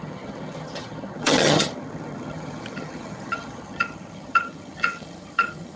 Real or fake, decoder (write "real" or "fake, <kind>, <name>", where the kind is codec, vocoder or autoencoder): fake, vocoder, HiFi-GAN